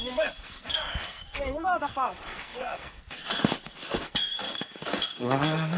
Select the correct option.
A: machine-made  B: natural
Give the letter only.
A